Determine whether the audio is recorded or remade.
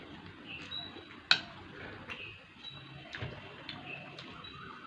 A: recorded